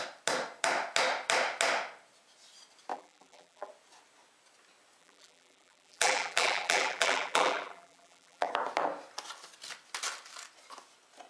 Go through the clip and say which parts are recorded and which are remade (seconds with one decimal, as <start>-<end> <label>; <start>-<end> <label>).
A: 0.0-2.9 recorded; 2.9-3.7 remade; 3.7-5.0 recorded; 5.0-8.5 remade; 8.5-11.3 recorded